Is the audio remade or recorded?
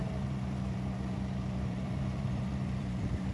remade